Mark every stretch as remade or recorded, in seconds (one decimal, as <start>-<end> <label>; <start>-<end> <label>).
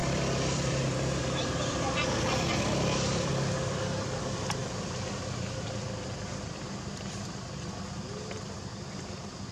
0.0-3.3 remade; 3.3-9.5 recorded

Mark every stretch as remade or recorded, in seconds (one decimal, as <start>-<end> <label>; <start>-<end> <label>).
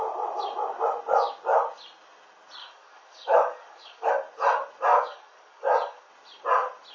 0.0-2.6 recorded; 2.6-4.1 remade; 4.1-4.9 recorded; 4.9-6.1 remade; 6.1-6.9 recorded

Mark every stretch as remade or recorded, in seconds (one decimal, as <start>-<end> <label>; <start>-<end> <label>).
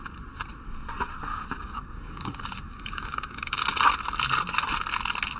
0.0-1.3 recorded; 1.3-3.6 remade; 3.6-5.4 recorded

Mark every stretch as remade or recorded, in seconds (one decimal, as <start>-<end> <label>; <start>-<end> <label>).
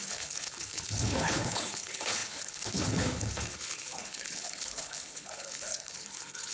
0.0-6.5 remade